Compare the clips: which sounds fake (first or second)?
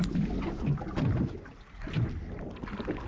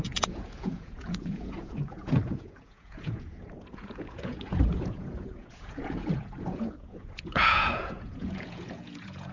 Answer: second